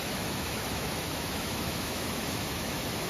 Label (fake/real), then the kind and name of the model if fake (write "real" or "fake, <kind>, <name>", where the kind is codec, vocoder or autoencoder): fake, autoencoder, DAC-VAE